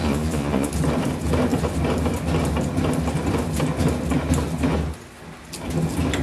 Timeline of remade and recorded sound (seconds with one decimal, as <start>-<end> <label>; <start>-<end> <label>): 0.0-0.7 remade; 0.7-6.2 recorded